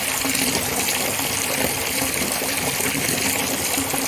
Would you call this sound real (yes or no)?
yes